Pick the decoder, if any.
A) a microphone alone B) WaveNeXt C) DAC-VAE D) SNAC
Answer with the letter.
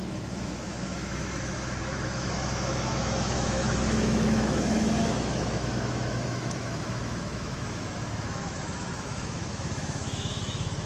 C